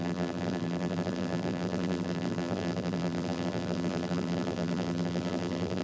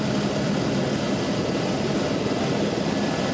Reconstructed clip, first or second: first